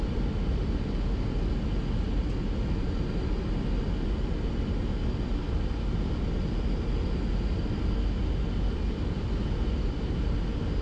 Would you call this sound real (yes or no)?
yes